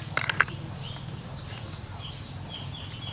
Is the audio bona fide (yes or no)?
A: yes